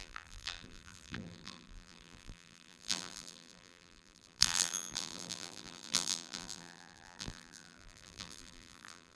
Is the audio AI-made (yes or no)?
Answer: yes